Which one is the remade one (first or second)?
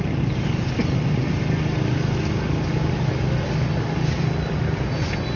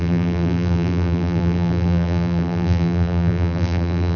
second